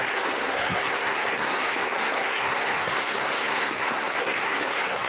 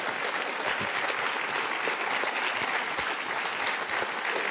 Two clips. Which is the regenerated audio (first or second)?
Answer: first